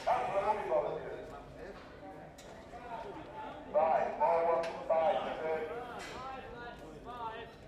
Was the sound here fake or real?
real